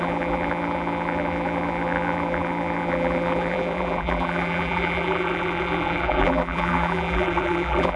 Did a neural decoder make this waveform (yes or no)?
yes